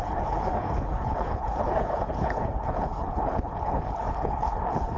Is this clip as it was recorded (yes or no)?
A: no